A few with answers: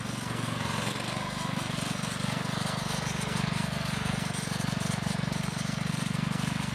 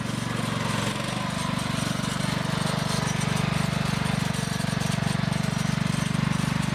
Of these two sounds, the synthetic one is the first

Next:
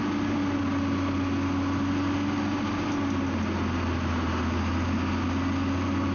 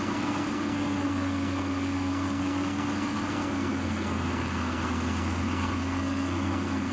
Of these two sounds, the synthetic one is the second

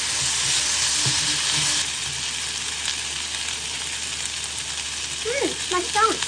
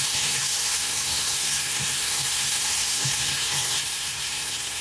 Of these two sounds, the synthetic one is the second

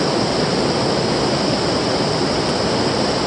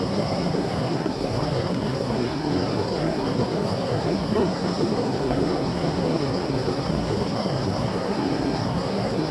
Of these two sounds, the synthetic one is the second